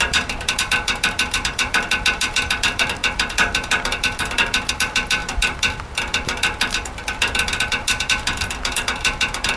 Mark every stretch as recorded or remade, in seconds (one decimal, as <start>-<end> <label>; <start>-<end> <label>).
0.0-9.6 remade